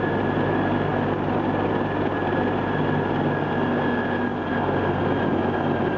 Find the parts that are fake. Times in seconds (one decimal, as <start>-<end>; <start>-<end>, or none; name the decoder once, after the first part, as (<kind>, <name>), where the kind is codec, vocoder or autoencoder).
none